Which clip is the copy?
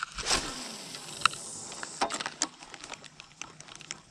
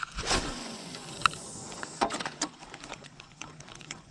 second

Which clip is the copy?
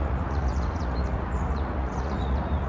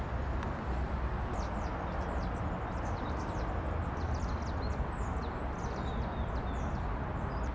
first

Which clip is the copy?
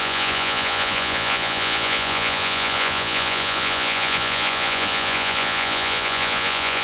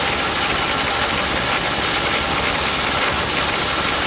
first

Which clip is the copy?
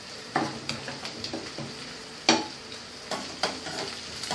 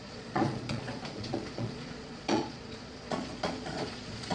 second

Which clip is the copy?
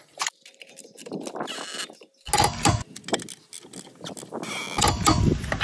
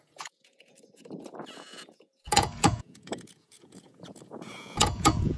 second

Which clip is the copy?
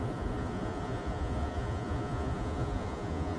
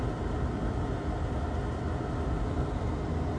first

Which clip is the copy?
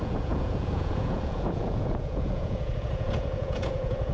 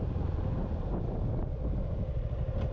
first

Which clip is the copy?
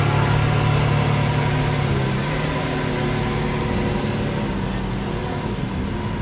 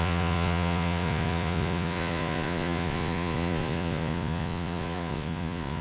second